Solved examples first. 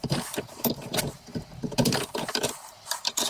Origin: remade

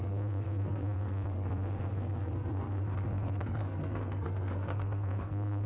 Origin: remade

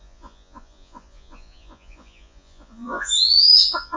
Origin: remade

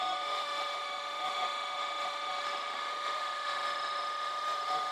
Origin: remade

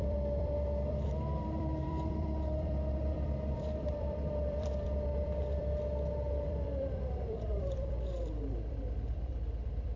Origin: remade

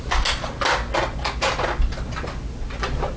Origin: recorded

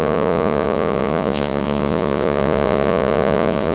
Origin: remade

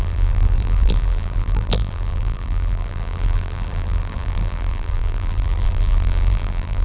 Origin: remade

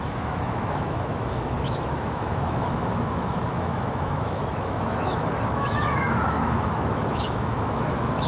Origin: remade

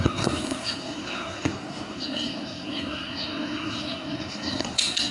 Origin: remade